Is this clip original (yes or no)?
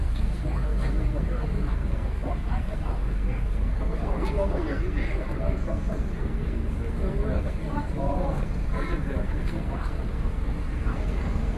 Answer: no